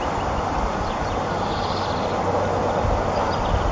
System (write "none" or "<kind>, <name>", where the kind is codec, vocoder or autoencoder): none